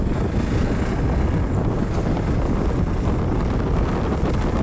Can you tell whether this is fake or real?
real